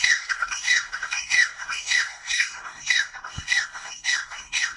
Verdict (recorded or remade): remade